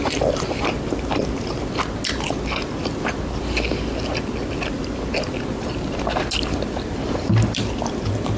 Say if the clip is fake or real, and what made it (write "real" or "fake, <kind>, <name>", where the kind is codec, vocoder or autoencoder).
real